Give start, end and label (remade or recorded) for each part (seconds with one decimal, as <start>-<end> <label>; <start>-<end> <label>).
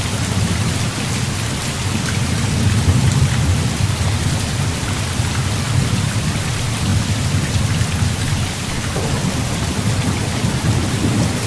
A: 0.0-11.5 recorded